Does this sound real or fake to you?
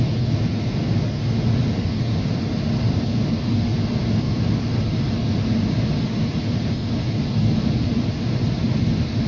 real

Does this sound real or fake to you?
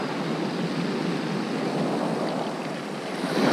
real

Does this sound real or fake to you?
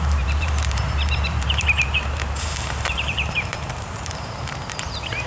fake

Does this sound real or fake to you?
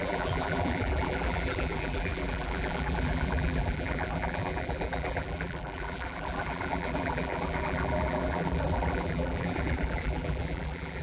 fake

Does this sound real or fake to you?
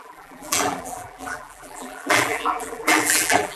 fake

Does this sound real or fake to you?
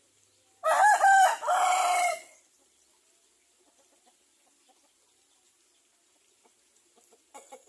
real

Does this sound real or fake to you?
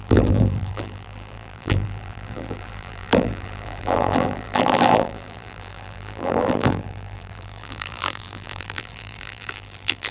fake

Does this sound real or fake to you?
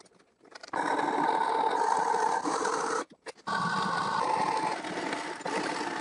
real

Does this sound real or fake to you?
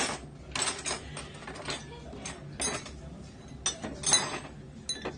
real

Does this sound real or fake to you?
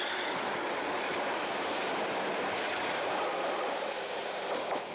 fake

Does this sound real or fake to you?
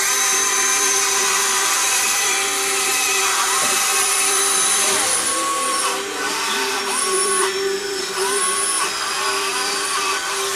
fake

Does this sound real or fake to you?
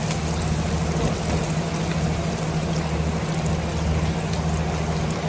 real